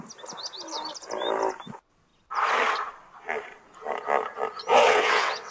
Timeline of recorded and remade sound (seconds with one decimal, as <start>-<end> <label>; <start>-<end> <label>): 0.0-4.7 recorded; 4.7-5.5 remade